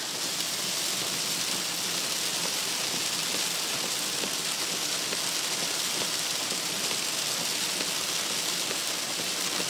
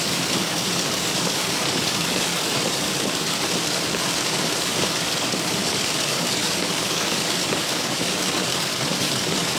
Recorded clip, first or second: first